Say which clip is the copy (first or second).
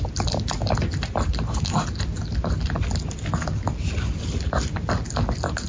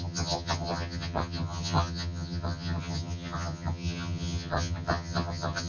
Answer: second